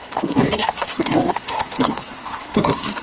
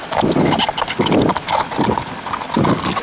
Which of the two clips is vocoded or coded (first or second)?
first